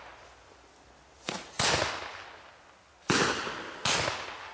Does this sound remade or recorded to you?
recorded